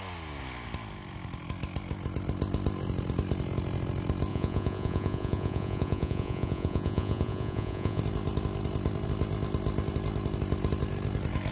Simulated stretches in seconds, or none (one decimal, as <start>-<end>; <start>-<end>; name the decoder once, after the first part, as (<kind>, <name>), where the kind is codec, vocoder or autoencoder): 4.3-8.0 (vocoder, Vocos)

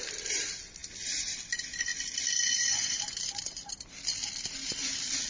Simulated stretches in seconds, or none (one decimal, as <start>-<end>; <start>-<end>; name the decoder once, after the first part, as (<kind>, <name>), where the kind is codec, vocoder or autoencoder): none

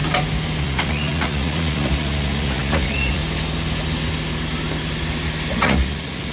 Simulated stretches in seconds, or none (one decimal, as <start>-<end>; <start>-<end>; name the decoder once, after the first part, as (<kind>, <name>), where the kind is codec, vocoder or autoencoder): 0.6-3.2 (vocoder, Vocos); 5.5-6.3